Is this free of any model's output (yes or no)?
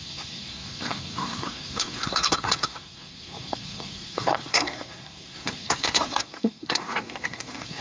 no